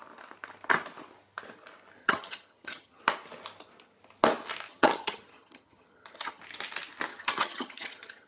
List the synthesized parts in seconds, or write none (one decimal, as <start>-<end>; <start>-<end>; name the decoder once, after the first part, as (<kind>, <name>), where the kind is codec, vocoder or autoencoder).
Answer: 2.0-3.0 (vocoder, HiFi-GAN); 4.7-6.4; 7.1-8.3